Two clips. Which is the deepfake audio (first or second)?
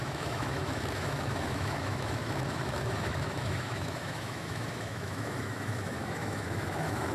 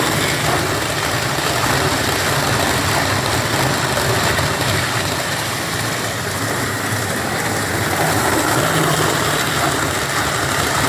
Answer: first